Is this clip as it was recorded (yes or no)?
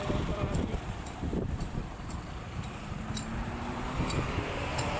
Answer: no